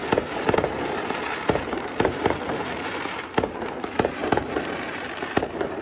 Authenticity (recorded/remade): remade